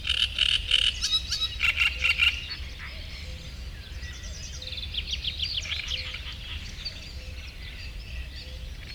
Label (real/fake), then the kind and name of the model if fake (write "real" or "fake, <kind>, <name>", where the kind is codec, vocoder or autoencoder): real